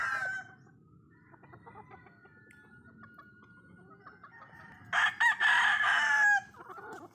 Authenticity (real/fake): real